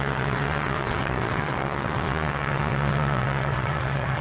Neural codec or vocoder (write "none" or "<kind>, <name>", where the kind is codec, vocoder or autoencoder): vocoder, WaveNeXt